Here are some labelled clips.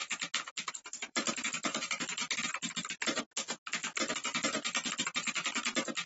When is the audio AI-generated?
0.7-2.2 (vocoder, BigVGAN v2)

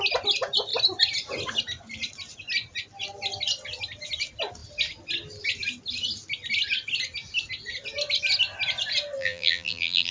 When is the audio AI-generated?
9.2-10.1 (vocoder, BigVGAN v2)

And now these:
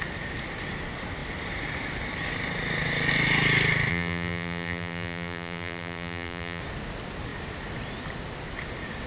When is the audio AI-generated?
3.9-6.6 (vocoder, BigVGAN v2)